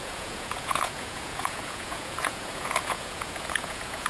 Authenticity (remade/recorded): remade